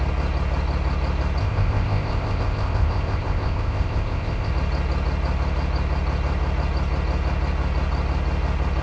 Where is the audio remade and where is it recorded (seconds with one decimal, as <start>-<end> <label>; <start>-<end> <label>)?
0.0-1.4 recorded; 1.4-4.5 remade; 4.5-8.8 recorded

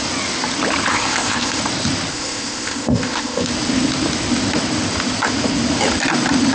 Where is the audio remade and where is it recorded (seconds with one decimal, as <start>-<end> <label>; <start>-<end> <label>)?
0.0-0.9 recorded; 0.9-1.6 remade; 1.6-2.1 recorded; 2.1-3.5 remade; 3.5-6.5 recorded

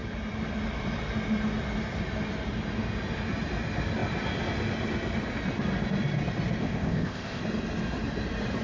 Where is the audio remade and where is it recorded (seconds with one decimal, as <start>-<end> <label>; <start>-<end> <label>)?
0.0-6.6 recorded; 6.6-7.4 remade; 7.4-8.6 recorded

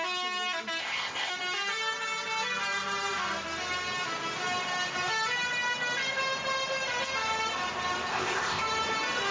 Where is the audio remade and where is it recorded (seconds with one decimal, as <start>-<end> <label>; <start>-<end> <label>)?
0.0-0.8 recorded; 0.8-1.3 remade; 1.3-8.1 recorded; 8.1-8.6 remade; 8.6-9.3 recorded

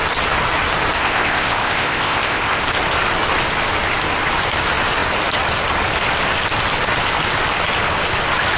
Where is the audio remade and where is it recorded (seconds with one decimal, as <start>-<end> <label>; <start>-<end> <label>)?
0.0-1.0 recorded; 1.0-2.6 remade; 2.6-8.6 recorded